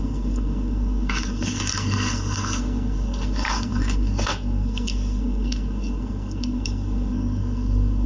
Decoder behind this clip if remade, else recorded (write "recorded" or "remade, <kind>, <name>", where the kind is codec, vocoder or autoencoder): remade, codec, SNAC